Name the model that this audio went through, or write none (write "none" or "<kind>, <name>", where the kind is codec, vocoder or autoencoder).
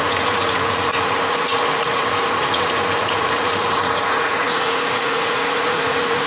vocoder, Vocos